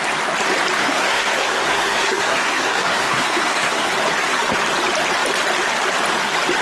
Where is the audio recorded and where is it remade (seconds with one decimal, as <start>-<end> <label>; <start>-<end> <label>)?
0.0-0.8 recorded; 0.8-3.9 remade; 3.9-6.6 recorded